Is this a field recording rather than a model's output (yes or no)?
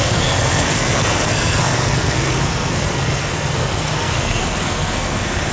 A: no